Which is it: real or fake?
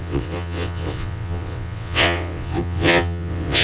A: fake